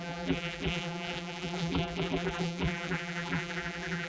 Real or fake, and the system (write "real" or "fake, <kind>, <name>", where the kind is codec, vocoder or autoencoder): fake, vocoder, BigVGAN v2